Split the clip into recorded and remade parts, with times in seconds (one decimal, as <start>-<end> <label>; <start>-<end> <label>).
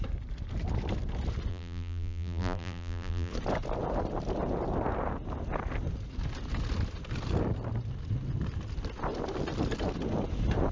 0.0-1.5 recorded; 1.5-3.3 remade; 3.3-10.7 recorded